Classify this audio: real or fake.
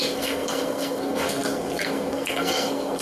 fake